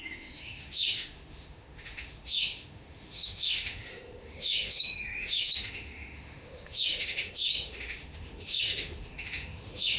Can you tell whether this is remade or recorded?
remade